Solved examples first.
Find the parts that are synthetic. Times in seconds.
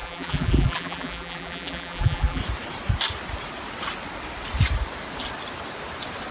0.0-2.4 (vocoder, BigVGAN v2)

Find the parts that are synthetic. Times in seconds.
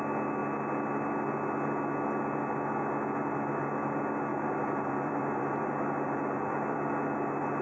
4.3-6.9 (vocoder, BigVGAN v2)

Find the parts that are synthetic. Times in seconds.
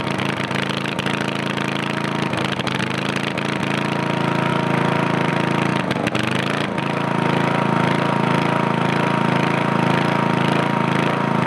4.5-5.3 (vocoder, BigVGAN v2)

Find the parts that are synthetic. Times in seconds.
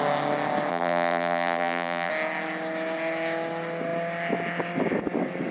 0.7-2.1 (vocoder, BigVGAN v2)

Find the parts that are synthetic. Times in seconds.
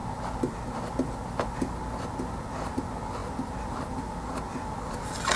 none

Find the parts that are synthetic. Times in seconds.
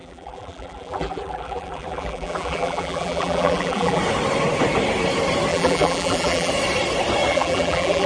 0.0-4.0 (vocoder, BigVGAN v2); 5.5-6.5; 7.3-8.1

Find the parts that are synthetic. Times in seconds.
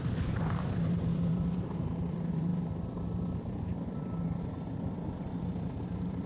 0.0-2.5 (vocoder, BigVGAN v2)